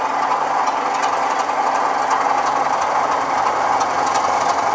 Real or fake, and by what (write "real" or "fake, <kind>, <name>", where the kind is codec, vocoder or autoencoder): real